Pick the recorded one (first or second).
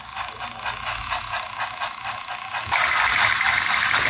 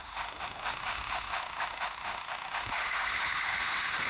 first